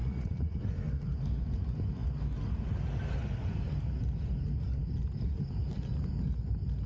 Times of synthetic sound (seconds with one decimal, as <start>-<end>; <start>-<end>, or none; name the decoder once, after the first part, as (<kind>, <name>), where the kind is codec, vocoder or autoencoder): 0.0-0.6 (vocoder, Vocos)